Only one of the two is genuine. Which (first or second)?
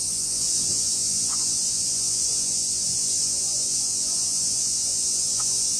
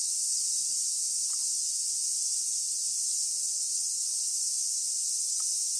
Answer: second